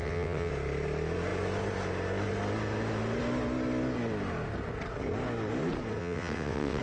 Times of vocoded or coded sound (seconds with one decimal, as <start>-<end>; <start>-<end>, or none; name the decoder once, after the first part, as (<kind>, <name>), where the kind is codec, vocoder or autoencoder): 0.0-0.5 (vocoder, WaveNeXt); 6.0-6.8